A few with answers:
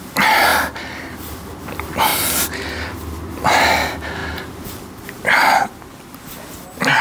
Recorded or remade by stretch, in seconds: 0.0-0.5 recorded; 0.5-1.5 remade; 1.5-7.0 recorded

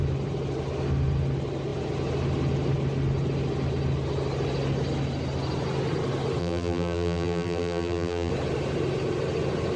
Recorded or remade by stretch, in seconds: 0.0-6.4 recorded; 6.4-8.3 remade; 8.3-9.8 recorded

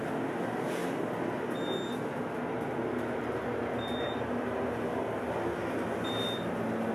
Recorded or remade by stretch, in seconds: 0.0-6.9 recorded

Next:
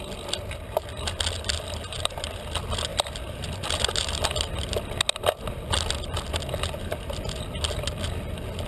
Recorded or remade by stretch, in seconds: 0.0-2.9 recorded; 2.9-3.9 remade; 3.9-8.7 recorded

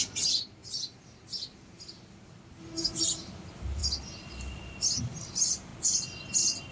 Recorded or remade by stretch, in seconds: 0.0-0.6 remade; 0.6-2.8 recorded; 2.8-3.8 remade; 3.8-5.0 recorded; 5.0-5.7 remade; 5.7-6.7 recorded